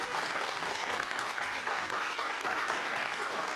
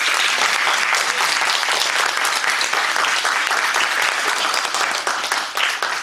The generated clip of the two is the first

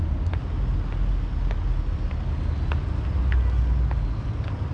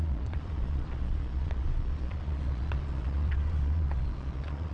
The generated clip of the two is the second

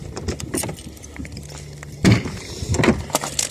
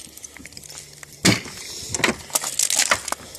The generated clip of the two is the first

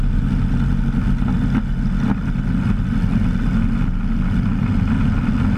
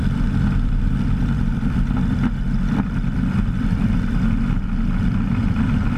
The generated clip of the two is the second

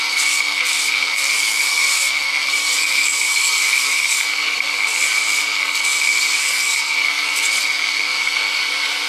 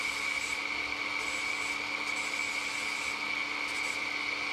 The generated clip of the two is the first